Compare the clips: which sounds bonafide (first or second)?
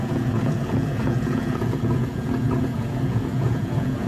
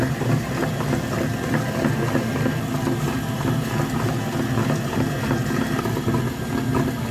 second